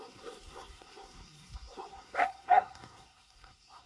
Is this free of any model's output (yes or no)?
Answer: no